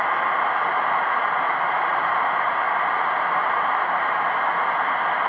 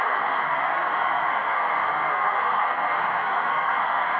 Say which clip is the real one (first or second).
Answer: first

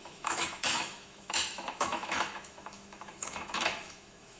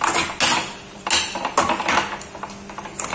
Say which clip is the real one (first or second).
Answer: second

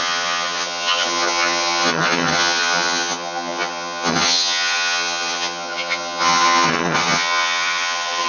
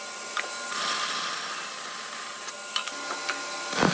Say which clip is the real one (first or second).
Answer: second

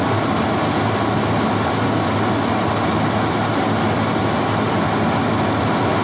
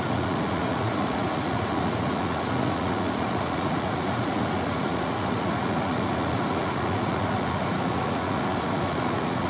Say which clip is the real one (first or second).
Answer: first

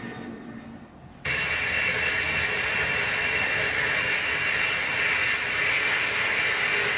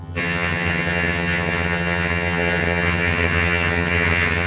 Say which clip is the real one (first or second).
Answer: first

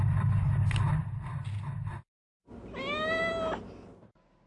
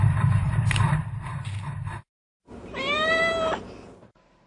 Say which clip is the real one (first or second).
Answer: first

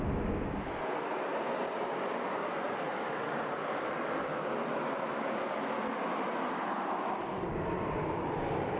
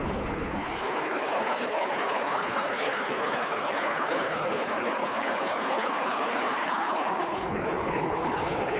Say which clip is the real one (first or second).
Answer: first